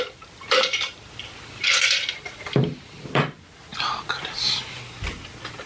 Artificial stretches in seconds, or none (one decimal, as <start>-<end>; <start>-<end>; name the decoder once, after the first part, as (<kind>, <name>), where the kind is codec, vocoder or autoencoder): 0.0-3.7 (vocoder, BigVGAN v2)